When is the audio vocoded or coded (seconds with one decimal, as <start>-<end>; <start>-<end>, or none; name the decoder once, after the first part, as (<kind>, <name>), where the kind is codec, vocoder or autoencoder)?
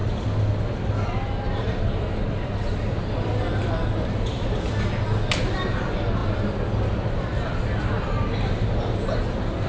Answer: none